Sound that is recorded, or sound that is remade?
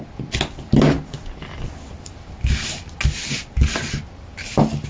recorded